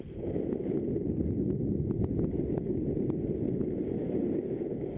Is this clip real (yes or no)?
yes